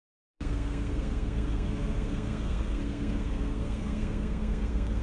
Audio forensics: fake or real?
fake